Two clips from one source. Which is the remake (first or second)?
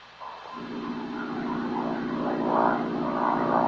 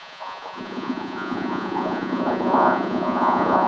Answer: second